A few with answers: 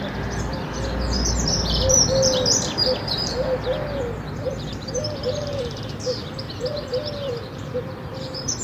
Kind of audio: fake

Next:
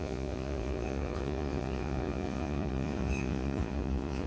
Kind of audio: fake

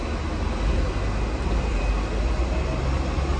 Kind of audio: real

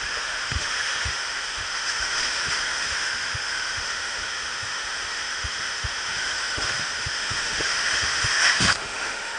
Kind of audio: fake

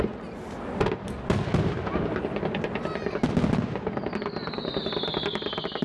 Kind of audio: real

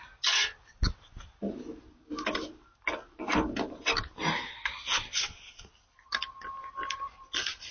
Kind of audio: real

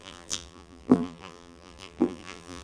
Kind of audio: fake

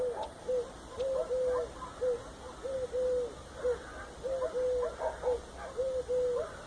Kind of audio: real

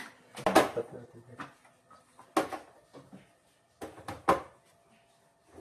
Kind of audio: real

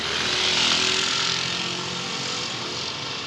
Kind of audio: real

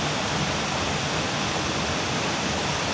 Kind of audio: real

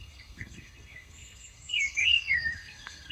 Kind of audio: fake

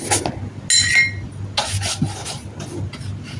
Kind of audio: real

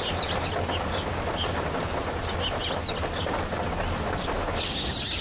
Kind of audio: real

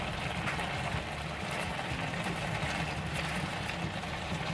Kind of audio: real